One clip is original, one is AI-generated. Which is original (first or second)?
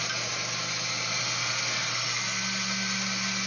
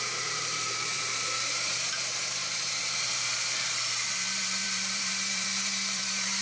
first